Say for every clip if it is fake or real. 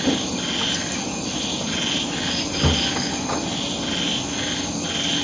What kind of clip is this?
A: real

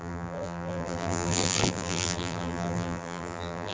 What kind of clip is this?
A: fake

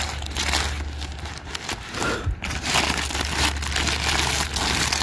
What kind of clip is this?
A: real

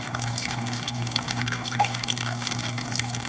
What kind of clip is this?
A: fake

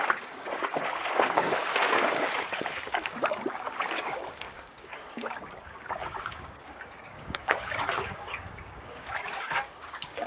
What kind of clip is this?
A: fake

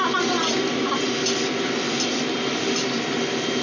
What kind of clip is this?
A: real